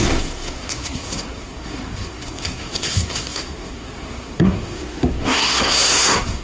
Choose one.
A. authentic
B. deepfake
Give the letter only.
B